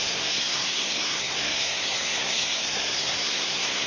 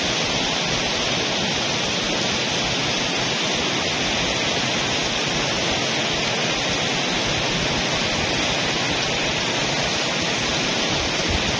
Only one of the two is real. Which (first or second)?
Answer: second